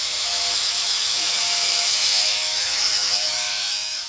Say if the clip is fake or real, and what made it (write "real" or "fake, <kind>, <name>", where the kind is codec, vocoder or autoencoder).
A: fake, autoencoder, DAC-VAE